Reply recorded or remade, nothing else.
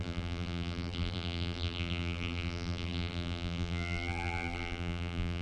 remade